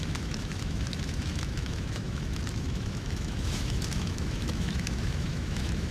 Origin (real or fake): fake